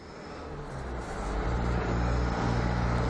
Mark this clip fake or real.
real